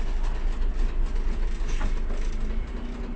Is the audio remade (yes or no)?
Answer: no